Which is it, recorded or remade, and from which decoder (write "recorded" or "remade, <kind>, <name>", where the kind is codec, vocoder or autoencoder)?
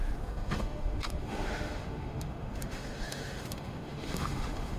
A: remade, autoencoder, DAC-VAE